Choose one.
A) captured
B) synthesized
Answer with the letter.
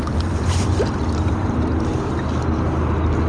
A